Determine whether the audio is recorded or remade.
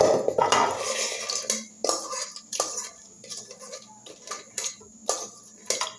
recorded